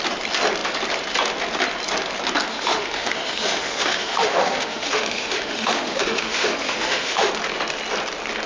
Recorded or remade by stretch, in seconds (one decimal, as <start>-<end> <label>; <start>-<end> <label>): 0.0-2.5 recorded; 2.5-7.3 remade; 7.3-8.5 recorded